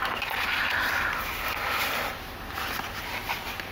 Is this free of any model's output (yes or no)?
yes